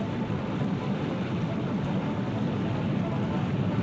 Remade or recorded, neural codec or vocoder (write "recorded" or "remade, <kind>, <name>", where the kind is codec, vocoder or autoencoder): recorded